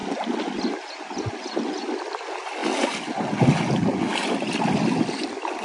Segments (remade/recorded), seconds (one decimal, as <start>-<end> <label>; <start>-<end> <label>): 0.0-5.6 recorded